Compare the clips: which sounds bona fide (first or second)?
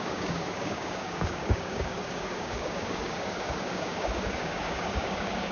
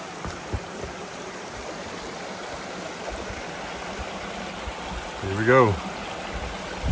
second